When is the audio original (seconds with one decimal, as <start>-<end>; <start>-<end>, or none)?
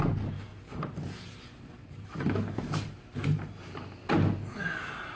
0.0-0.5; 3.6-5.2